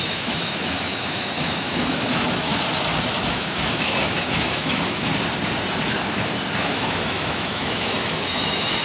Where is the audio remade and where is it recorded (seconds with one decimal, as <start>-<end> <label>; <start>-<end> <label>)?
0.0-2.5 remade; 2.5-3.3 recorded; 3.3-5.1 remade; 5.1-6.6 recorded; 6.6-8.8 remade